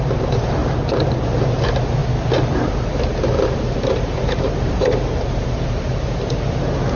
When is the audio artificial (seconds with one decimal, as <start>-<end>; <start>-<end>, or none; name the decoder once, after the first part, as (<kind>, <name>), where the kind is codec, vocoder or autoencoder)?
0.0-2.0 (vocoder, BigVGAN v2); 2.5-7.0